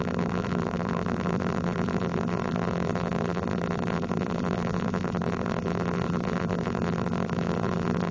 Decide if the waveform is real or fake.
fake